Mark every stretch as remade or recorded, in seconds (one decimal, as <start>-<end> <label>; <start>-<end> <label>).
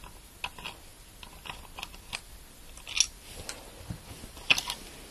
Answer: 0.0-5.1 recorded